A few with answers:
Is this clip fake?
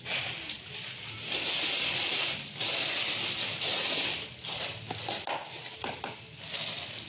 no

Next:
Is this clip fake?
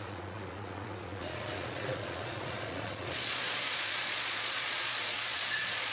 yes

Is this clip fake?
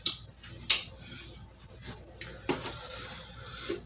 no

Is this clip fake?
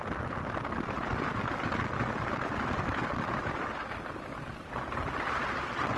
no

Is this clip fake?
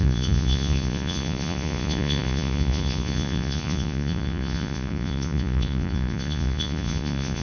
yes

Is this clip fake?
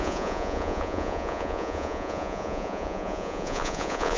yes